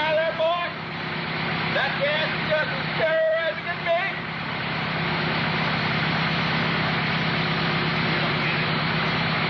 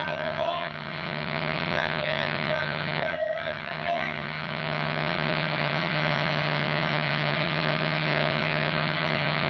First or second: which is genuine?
first